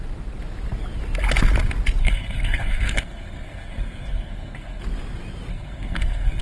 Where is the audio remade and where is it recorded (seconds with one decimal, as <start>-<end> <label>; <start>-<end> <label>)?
0.0-2.0 recorded; 2.0-4.8 remade; 4.8-5.5 recorded; 5.5-6.4 remade